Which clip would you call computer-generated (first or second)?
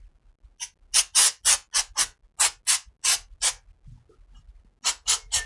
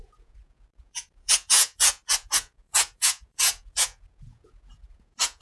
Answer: second